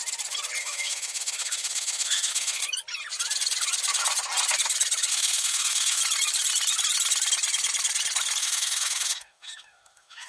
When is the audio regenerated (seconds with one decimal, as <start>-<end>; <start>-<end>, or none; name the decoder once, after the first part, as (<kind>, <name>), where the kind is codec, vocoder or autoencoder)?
0.6-2.6 (autoencoder, DAC-VAE); 5.1-6.0; 8.4-10.3